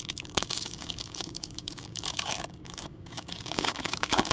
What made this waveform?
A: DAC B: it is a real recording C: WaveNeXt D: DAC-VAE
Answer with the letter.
A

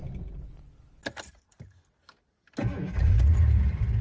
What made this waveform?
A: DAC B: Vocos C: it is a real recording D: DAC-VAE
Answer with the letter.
C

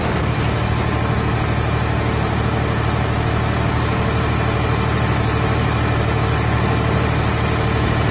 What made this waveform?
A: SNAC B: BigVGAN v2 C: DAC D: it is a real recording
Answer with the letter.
D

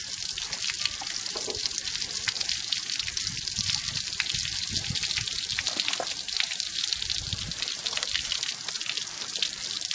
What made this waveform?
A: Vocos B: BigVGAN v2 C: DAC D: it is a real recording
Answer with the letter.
D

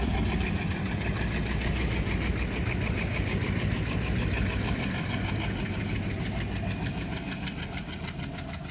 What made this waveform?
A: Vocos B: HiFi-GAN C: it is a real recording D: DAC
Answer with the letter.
C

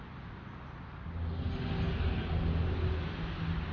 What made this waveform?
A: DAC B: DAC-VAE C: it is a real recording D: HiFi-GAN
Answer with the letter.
C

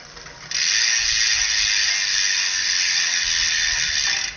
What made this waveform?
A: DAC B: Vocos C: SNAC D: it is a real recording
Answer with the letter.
D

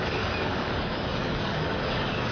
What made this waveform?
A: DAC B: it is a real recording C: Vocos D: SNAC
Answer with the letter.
A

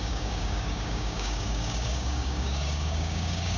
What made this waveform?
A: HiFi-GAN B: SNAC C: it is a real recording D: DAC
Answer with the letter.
D